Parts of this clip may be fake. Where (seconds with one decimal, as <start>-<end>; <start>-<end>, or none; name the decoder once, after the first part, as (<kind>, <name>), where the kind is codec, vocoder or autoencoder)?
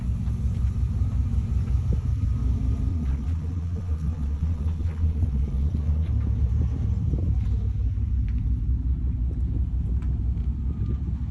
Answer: 2.9-6.1 (vocoder, Vocos)